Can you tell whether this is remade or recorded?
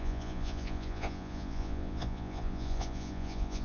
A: remade